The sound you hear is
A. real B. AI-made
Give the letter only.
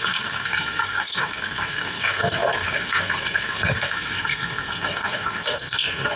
B